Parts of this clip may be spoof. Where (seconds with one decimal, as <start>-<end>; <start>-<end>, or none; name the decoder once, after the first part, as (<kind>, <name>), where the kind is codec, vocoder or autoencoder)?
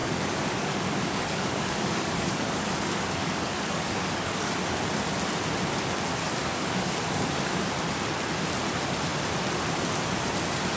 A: 0.0-4.6 (codec, DAC); 6.2-7.6